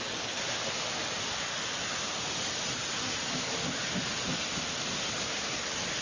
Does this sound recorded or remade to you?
recorded